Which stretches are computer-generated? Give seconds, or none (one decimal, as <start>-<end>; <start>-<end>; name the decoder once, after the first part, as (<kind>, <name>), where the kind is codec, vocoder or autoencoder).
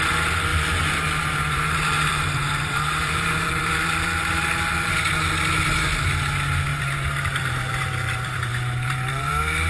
0.5-4.9 (vocoder, BigVGAN v2); 6.7-9.7